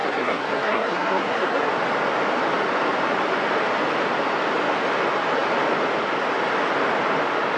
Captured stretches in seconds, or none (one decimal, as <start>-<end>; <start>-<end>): 1.7-7.6